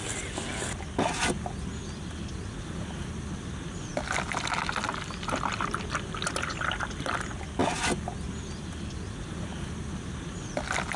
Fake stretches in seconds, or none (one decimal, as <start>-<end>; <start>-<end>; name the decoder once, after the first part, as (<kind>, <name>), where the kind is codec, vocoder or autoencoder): none